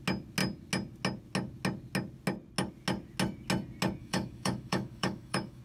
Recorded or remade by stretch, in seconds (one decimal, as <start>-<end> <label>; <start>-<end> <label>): 0.0-4.0 recorded; 4.0-5.6 remade